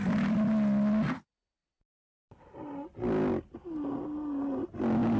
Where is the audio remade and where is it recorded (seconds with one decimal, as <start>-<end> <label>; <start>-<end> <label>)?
0.0-5.2 recorded